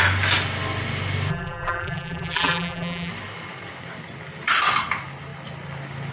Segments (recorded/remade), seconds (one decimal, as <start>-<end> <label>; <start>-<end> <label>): 0.0-1.3 recorded; 1.3-3.1 remade; 3.1-6.1 recorded